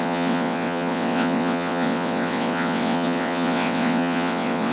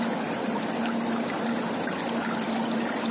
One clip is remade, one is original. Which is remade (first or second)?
first